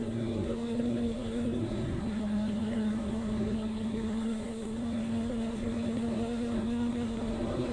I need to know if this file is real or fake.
fake